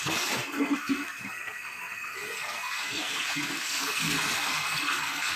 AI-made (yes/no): yes